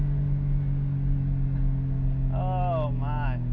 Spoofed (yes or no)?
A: no